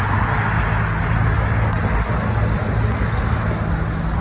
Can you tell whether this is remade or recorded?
recorded